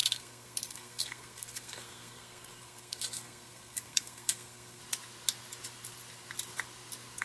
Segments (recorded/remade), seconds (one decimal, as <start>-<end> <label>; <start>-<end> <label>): 0.0-4.8 remade; 4.8-7.2 recorded